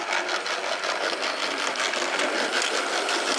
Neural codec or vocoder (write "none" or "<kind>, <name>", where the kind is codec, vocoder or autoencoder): none